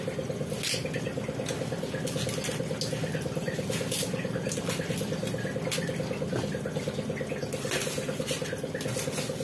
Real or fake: real